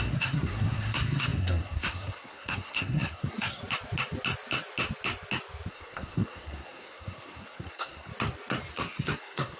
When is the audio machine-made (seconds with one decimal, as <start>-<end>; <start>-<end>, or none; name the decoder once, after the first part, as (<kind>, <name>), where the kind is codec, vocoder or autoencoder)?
0.0-3.6 (codec, SNAC); 5.7-8.1; 8.7-9.6